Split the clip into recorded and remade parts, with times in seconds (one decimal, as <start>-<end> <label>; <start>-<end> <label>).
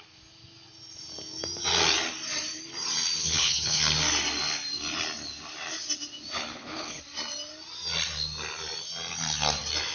0.0-3.2 recorded; 3.2-3.8 remade; 3.8-6.5 recorded; 6.5-7.0 remade; 7.0-9.9 recorded